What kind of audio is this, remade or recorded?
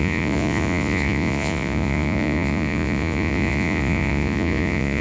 remade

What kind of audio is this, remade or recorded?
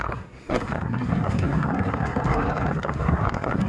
remade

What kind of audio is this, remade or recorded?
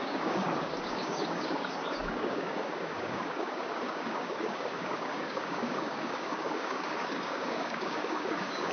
remade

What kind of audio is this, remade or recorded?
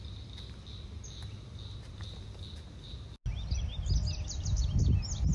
recorded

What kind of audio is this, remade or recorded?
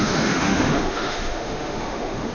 remade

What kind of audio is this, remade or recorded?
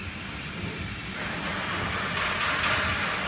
recorded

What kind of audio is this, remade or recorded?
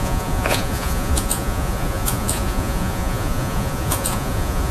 remade